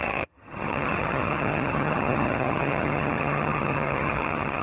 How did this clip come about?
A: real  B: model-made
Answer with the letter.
B